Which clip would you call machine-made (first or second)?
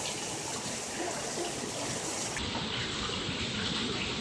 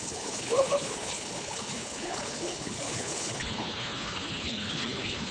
second